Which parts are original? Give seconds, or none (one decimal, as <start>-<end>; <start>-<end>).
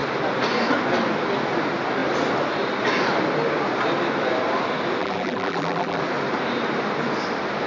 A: 0.0-5.0; 6.0-7.7